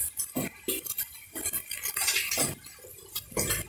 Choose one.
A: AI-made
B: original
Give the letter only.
B